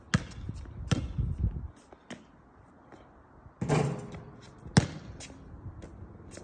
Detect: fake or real real